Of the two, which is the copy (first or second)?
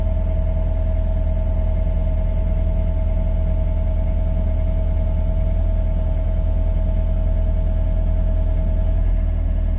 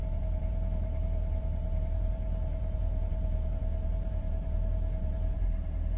second